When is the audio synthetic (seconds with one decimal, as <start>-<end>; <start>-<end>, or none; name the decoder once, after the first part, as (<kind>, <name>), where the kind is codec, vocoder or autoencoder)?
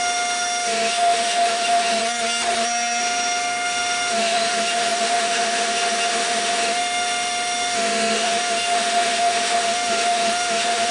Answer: 0.0-2.0 (autoencoder, DAC-VAE); 3.0-10.9